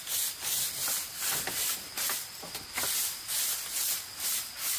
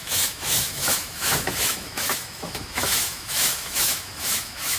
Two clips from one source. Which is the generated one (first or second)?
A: second